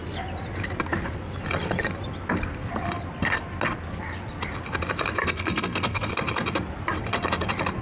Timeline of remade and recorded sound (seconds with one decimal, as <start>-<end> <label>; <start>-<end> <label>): 0.0-5.2 recorded; 5.2-6.1 remade; 6.1-7.8 recorded